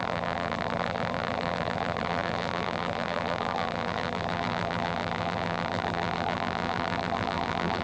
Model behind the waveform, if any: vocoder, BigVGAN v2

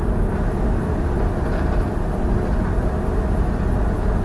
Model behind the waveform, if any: none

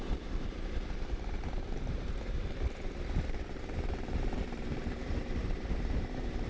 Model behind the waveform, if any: vocoder, BigVGAN v2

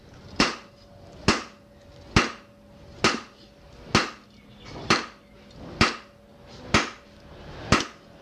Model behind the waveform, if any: none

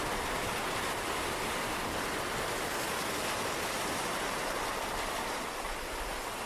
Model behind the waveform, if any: none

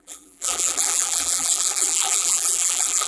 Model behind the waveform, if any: vocoder, BigVGAN v2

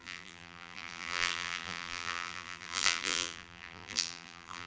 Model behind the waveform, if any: vocoder, BigVGAN v2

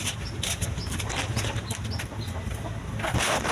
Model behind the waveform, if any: none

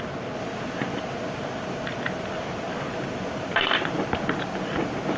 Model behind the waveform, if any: none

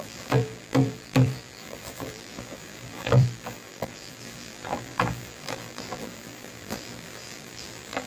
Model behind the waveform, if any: vocoder, BigVGAN v2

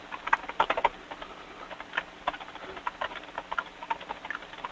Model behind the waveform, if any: none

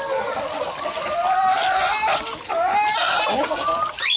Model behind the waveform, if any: none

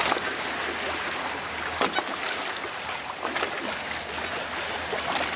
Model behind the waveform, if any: none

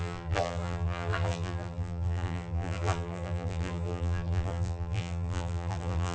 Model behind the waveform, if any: vocoder, BigVGAN v2